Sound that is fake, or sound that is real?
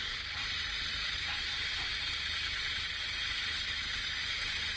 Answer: real